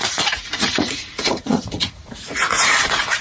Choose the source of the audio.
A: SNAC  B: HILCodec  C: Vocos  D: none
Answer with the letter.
C